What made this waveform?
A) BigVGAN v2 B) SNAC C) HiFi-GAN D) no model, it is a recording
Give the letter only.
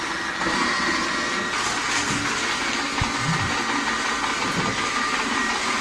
D